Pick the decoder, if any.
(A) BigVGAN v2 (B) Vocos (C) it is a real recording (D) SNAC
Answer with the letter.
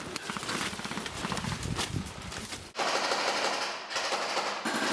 C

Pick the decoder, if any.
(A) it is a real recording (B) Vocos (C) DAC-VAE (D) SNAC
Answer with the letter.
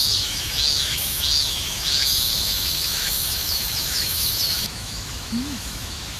C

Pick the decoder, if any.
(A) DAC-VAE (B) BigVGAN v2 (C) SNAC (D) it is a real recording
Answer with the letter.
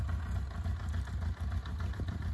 D